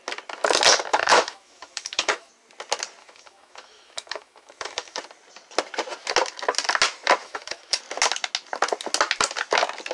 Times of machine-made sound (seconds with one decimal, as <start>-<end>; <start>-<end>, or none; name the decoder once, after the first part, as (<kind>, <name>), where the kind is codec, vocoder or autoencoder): 0.9-2.3 (autoencoder, DAC-VAE); 3.0-5.0; 7.2-7.8